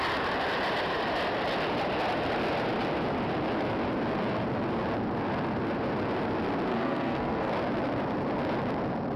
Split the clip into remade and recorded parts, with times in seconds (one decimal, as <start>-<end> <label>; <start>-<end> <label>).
0.0-6.7 recorded; 6.7-7.5 remade; 7.5-9.2 recorded